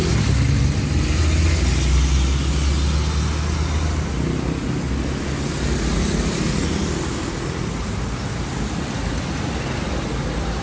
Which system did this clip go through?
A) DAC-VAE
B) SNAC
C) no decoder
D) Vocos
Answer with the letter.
C